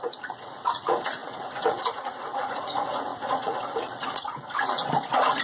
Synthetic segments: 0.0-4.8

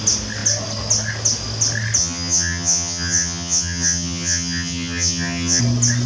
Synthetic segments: 2.0-5.6